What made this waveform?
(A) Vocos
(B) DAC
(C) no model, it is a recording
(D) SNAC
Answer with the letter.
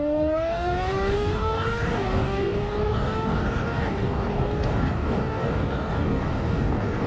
B